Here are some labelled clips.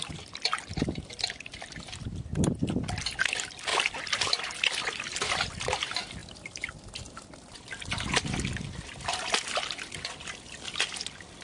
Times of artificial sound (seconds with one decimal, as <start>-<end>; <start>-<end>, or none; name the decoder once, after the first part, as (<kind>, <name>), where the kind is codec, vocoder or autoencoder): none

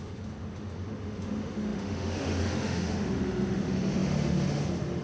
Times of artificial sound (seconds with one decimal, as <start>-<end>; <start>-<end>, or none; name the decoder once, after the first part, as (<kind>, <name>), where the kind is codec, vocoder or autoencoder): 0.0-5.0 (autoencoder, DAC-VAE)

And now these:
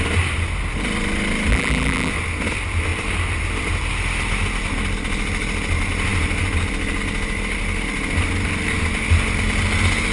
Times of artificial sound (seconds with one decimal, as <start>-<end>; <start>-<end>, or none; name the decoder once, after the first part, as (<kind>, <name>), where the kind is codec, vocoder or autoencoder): 1.5-2.1 (vocoder, BigVGAN v2)